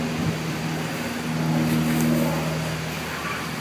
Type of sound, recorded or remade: recorded